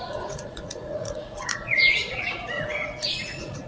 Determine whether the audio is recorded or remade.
remade